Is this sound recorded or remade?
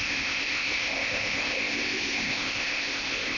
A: remade